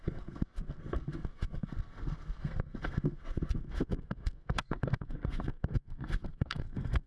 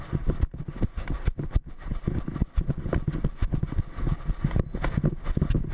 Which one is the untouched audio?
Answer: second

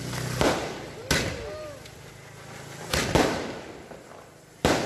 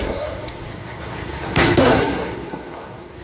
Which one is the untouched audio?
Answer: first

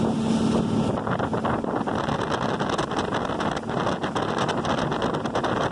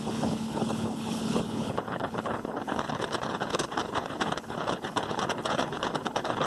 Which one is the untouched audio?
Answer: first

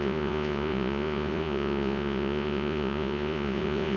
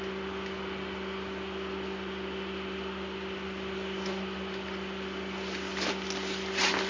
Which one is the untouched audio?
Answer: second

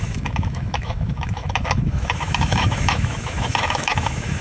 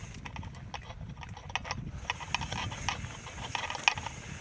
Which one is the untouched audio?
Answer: second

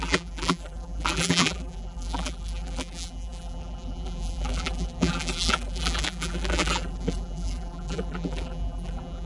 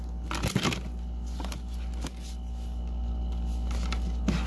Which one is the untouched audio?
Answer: second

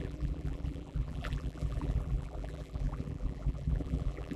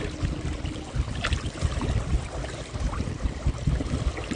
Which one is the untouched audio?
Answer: second